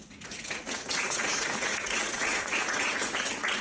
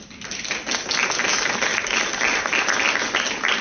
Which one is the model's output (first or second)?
first